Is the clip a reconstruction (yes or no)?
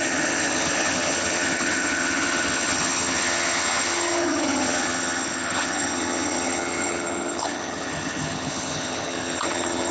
yes